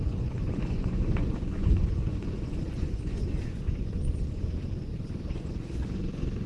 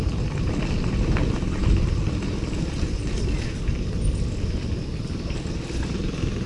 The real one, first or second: second